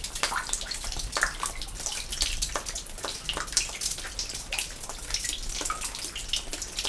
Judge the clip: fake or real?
real